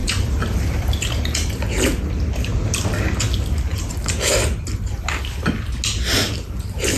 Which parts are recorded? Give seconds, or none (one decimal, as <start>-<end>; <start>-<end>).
1.2-3.7; 4.3-7.0